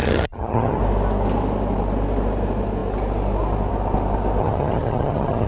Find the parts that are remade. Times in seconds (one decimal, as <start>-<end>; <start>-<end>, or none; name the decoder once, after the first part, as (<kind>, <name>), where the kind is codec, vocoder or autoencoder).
0.0-0.8 (vocoder, HiFi-GAN); 4.4-5.5